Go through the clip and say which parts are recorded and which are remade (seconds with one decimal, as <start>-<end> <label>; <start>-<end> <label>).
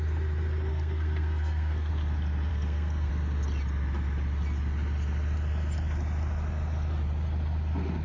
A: 0.0-0.7 recorded; 0.7-1.9 remade; 1.9-2.5 recorded; 2.5-3.1 remade; 3.1-8.0 recorded